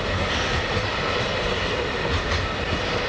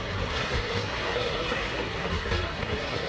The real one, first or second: first